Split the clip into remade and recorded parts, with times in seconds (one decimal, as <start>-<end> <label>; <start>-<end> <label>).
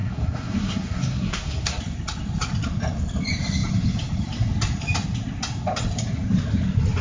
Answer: 0.0-1.8 remade; 1.8-7.0 recorded